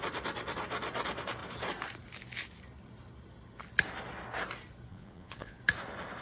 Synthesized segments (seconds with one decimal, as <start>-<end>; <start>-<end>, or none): 4.9-5.6